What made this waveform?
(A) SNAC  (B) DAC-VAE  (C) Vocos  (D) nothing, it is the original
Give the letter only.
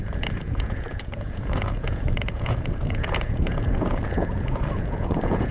C